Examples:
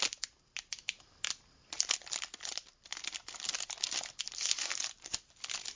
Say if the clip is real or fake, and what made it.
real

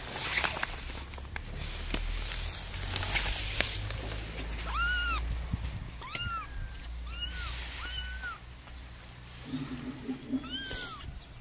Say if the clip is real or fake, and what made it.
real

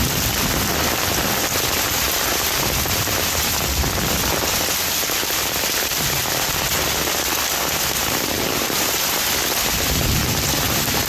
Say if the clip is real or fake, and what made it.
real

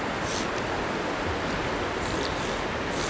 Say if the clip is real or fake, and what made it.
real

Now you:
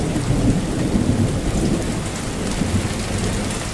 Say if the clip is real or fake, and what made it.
real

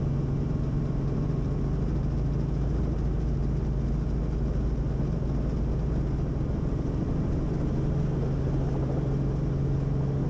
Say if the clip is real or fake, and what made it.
real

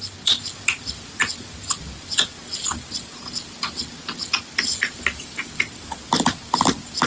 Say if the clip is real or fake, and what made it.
real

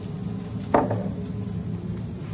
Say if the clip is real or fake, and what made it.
real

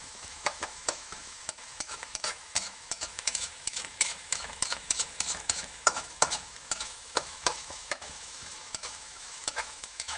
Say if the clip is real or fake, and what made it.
fake, autoencoder, DAC-VAE